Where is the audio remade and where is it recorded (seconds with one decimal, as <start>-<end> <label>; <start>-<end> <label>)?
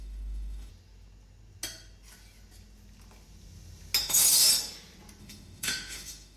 0.0-0.7 remade; 0.7-4.0 recorded; 4.0-4.5 remade; 4.5-5.2 recorded; 5.2-6.4 remade